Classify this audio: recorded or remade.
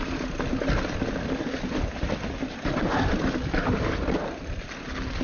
recorded